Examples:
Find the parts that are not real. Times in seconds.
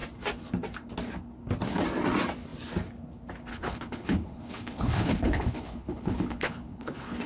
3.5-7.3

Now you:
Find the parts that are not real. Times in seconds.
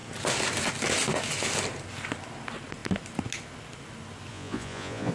4.3-5.1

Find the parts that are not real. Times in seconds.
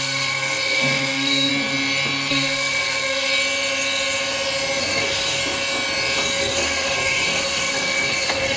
0.0-1.5; 2.3-3.3; 4.8-5.4; 6.4-8.6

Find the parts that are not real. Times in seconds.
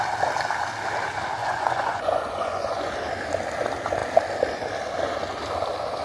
1.4-2.9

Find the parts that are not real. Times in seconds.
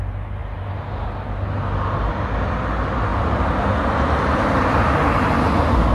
none